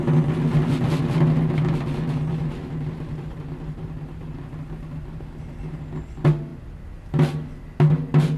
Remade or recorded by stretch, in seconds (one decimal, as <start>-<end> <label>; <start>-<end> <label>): 0.0-8.4 recorded